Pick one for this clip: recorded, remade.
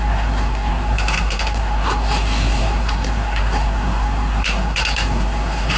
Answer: remade